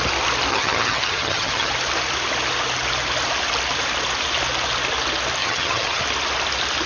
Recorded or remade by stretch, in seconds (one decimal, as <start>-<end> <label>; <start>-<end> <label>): 0.0-0.5 recorded; 0.5-1.7 remade; 1.7-5.4 recorded; 5.4-6.0 remade; 6.0-6.9 recorded